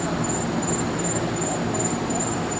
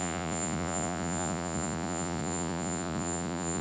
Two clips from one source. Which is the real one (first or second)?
first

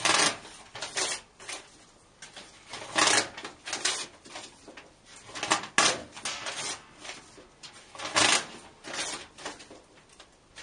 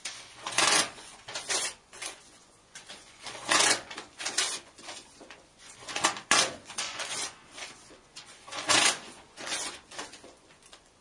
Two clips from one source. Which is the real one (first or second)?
first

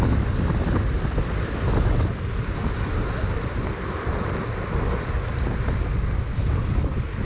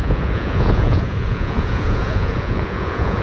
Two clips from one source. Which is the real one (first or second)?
first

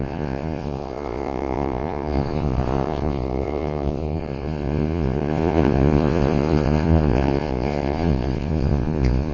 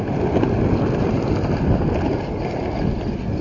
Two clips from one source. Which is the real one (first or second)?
second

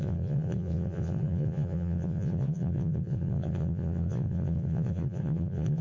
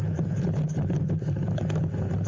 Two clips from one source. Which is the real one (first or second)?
second